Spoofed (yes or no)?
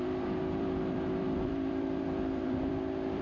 yes